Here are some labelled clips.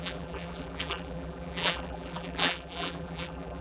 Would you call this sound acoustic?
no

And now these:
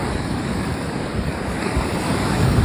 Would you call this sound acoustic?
no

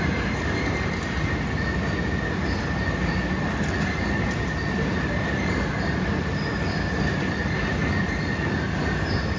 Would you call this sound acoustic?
yes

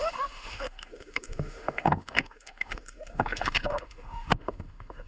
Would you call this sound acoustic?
no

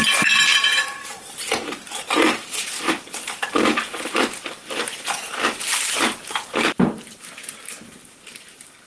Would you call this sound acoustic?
no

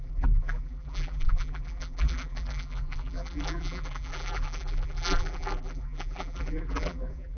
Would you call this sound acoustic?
no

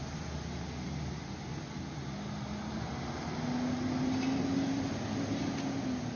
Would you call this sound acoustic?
yes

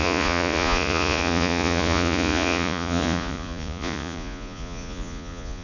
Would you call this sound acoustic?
no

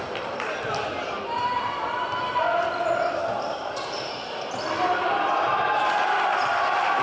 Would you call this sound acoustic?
yes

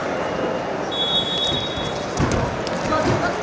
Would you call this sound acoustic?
yes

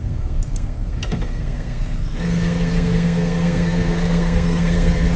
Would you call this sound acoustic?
no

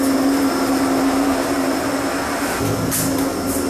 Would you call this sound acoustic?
yes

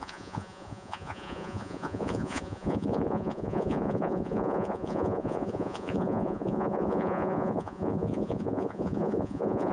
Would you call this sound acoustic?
no